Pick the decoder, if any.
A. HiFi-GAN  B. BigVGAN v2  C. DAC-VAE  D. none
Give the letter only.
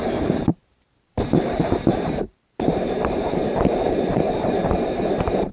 B